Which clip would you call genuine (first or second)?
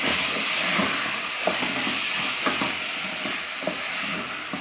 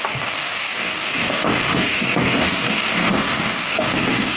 first